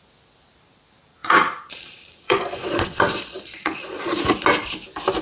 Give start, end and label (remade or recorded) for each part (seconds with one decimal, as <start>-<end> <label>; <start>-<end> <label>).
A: 0.0-1.1 recorded; 1.1-4.2 remade; 4.2-5.2 recorded